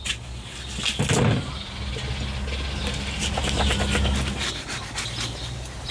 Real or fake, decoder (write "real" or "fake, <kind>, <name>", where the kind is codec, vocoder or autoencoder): real